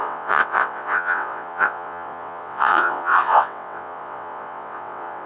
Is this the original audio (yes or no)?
no